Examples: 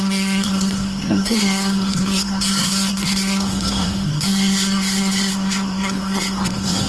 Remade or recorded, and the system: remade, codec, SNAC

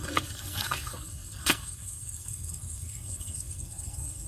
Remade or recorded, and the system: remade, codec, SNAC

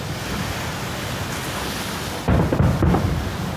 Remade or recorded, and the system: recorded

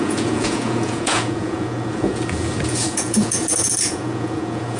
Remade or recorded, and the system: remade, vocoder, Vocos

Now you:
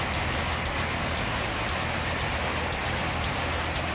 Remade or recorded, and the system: recorded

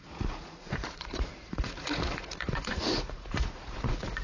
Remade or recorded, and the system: remade, vocoder, Vocos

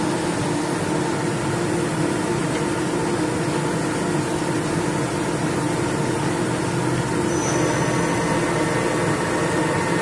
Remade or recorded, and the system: recorded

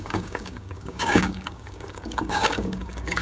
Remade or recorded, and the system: remade, codec, DAC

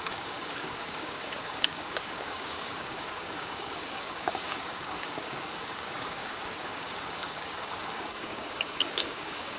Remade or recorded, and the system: remade, codec, DAC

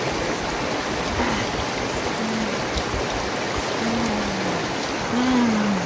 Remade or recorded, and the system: recorded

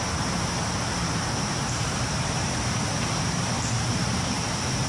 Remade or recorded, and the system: remade, vocoder, BigVGAN v2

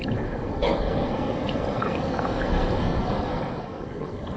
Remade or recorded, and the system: remade, codec, SNAC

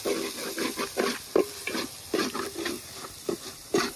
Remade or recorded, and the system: recorded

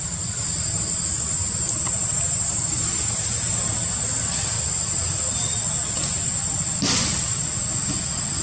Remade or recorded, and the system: recorded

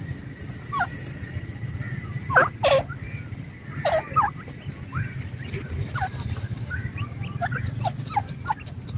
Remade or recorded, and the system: recorded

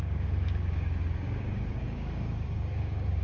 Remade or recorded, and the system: remade, codec, DAC